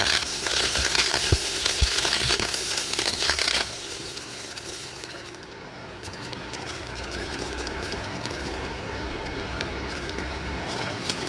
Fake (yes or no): yes